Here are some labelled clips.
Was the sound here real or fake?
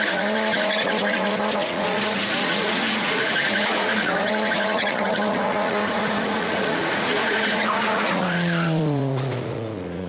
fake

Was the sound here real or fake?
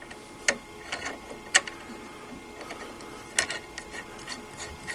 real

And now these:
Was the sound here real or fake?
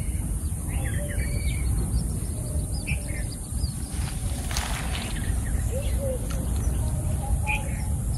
real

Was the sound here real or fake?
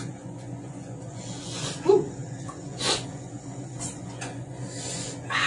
fake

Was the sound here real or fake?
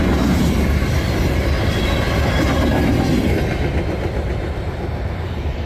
real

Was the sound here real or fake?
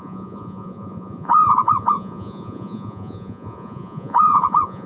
fake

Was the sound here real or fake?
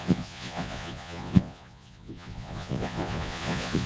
fake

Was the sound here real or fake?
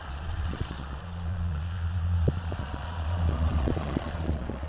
fake